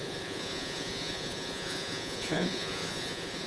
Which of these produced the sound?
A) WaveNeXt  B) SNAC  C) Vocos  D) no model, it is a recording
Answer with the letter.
C